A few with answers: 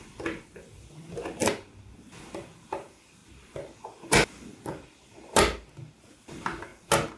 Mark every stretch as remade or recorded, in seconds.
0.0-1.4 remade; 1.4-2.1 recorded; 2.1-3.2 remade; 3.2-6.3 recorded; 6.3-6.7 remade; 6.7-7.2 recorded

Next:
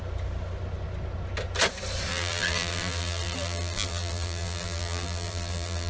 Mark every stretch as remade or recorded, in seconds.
0.0-2.1 recorded; 2.1-5.9 remade

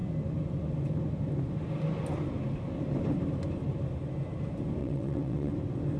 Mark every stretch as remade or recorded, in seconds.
0.0-4.8 recorded; 4.8-5.5 remade; 5.5-6.0 recorded

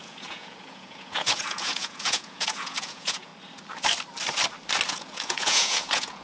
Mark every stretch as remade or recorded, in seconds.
0.0-3.3 remade; 3.3-4.9 recorded; 4.9-6.2 remade

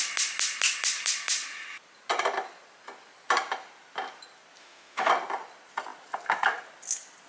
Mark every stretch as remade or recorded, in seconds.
0.0-4.6 recorded; 4.6-5.1 remade; 5.1-7.3 recorded